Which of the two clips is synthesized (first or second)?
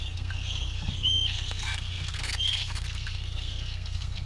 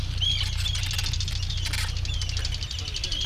first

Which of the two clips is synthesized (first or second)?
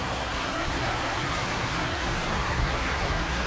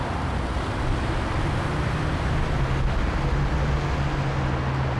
first